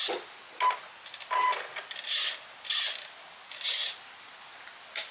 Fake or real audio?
real